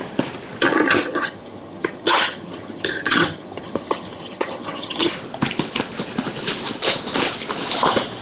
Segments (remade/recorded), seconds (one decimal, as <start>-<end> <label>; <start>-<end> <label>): 0.0-0.7 recorded; 0.7-5.1 remade; 5.1-8.2 recorded

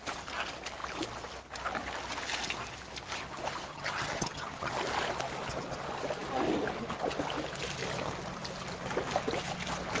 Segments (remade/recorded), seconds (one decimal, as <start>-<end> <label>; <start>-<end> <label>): 0.0-3.7 recorded; 3.7-4.7 remade; 4.7-10.0 recorded

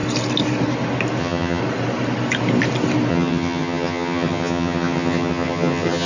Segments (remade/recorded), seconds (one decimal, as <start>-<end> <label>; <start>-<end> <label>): 0.0-1.2 recorded; 1.2-1.6 remade; 1.6-3.1 recorded; 3.1-6.1 remade

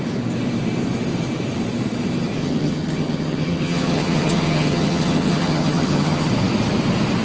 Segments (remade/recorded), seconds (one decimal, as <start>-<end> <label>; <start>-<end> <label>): 0.0-2.4 recorded; 2.4-6.3 remade; 6.3-7.2 recorded

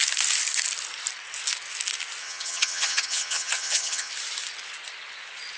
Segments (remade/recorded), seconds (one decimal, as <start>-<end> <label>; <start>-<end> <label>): 0.0-2.2 recorded; 2.2-4.1 remade; 4.1-5.6 recorded

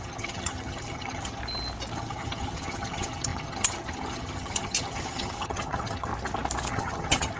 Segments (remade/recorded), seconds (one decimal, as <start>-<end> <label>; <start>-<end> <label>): 0.0-1.4 remade; 1.4-1.9 recorded; 1.9-6.1 remade; 6.1-6.7 recorded; 6.7-7.4 remade

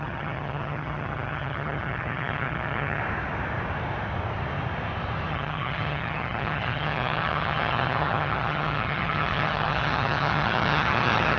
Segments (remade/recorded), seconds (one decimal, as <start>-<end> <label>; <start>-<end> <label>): 0.0-3.0 remade; 3.0-5.3 recorded; 5.3-11.4 remade

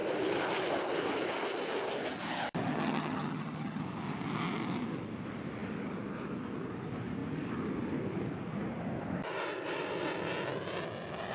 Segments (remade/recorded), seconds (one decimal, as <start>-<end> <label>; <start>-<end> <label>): 0.0-2.7 recorded; 2.7-3.8 remade; 3.8-11.3 recorded